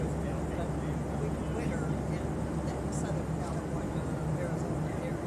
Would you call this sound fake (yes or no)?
no